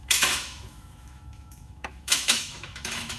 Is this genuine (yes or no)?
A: no